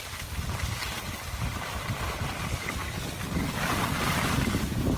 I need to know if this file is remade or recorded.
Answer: remade